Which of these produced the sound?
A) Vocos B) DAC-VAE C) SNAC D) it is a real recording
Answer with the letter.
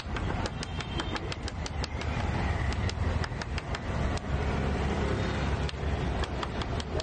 D